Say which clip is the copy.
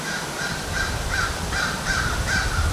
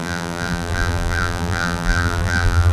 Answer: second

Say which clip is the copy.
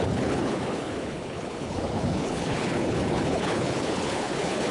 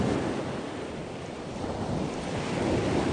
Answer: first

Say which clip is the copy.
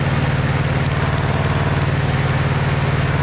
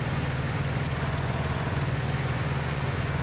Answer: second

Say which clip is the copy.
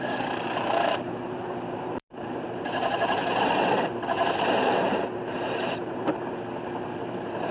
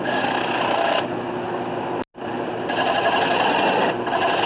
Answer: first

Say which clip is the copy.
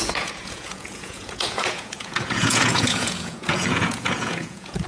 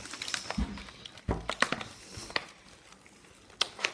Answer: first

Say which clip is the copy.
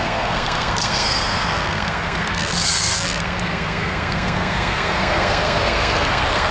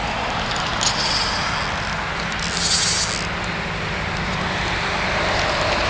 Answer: first